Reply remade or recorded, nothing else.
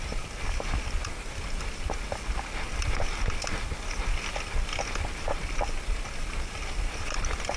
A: recorded